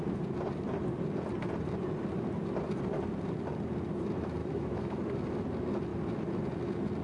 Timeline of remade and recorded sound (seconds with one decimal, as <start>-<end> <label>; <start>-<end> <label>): 0.0-4.4 recorded; 4.4-5.0 remade; 5.0-7.0 recorded

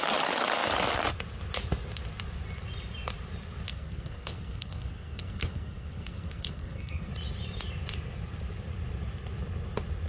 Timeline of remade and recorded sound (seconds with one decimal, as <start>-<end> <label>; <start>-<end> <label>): 0.0-3.7 recorded; 3.7-7.1 remade; 7.1-10.1 recorded

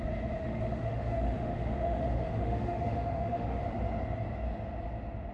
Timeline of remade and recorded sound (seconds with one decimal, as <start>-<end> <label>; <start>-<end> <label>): 0.0-0.4 recorded; 0.4-3.6 remade; 3.6-5.3 recorded

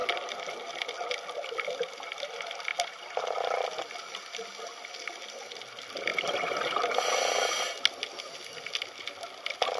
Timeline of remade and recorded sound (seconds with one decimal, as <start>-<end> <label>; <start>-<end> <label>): 0.0-1.1 remade; 1.1-6.1 recorded; 6.1-6.9 remade; 6.9-9.8 recorded

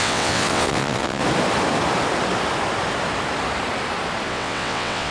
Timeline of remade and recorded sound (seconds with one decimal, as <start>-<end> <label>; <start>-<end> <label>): 0.0-1.2 remade; 1.2-4.3 recorded; 4.3-5.1 remade

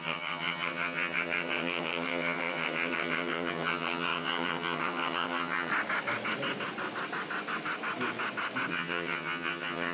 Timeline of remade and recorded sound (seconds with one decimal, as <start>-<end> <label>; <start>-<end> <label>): 0.0-5.7 remade; 5.7-8.7 recorded; 8.7-9.9 remade